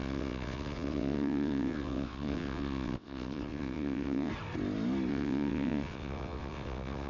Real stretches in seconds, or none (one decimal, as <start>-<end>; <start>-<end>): 4.3-5.1